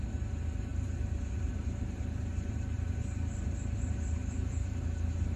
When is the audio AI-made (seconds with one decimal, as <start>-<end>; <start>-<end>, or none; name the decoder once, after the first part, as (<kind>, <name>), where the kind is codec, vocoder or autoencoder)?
0.7-3.8 (vocoder, BigVGAN v2); 4.2-5.4